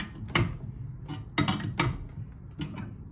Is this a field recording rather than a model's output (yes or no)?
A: yes